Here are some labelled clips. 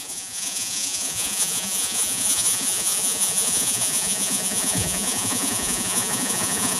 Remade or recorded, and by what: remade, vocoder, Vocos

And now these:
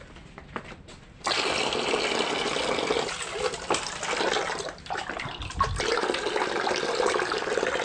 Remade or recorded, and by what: recorded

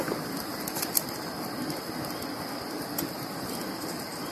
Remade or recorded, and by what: recorded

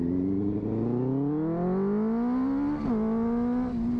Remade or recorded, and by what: recorded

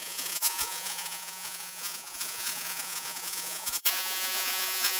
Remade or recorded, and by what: remade, vocoder, Vocos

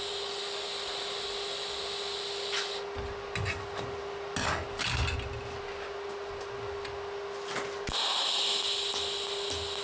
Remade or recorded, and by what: recorded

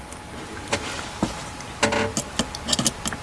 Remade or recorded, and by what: recorded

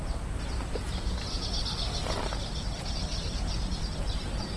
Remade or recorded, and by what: recorded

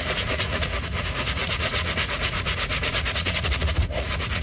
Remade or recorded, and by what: remade, vocoder, Vocos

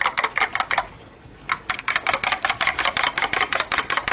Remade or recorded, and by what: recorded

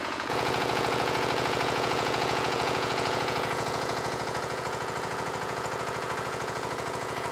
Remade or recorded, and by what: remade, vocoder, Vocos